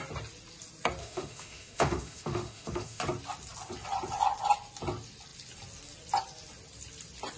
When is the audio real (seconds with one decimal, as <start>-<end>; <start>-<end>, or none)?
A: 0.0-1.0; 3.0-7.4